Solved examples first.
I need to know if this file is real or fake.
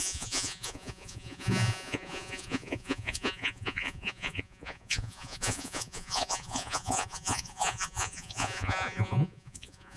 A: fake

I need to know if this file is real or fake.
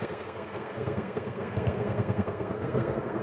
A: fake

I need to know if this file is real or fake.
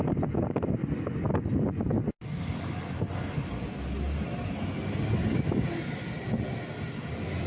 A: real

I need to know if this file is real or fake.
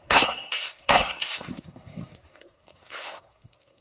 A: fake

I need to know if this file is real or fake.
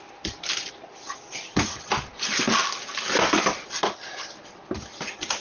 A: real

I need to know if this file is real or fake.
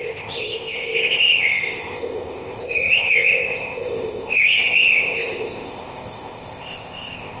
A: fake